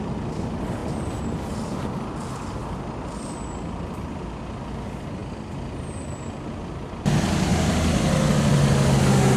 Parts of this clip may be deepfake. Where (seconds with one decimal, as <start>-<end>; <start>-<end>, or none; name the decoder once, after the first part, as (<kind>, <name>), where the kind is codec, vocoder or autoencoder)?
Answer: none